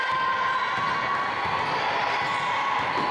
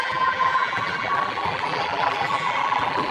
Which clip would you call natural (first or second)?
first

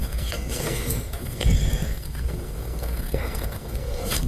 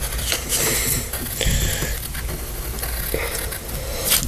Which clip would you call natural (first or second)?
second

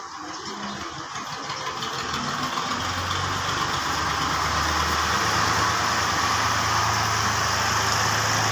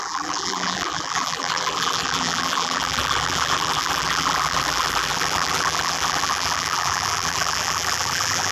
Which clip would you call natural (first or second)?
first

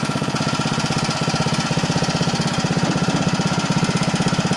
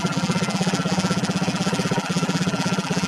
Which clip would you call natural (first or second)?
first